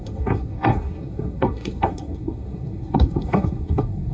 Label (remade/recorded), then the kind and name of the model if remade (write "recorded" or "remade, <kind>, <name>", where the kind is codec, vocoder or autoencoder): remade, codec, SNAC